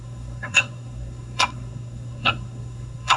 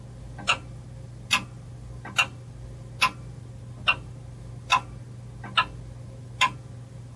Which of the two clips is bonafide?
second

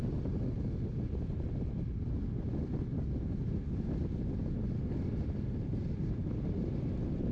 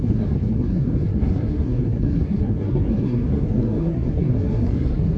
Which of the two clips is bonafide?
first